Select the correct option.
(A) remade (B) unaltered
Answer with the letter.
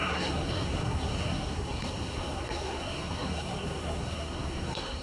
A